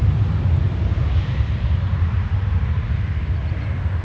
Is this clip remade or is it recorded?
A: recorded